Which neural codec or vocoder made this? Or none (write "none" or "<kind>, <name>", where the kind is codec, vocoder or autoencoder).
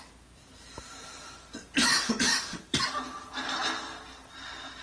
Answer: none